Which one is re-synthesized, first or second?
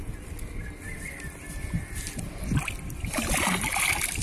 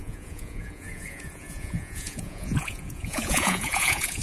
second